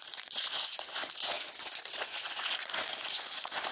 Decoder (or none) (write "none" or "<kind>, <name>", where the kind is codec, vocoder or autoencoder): vocoder, Vocos